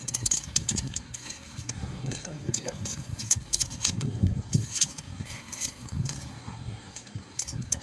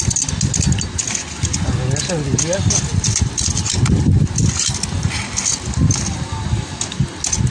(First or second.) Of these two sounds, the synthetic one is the first